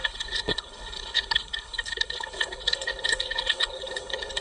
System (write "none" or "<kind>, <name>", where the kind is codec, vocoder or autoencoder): codec, HILCodec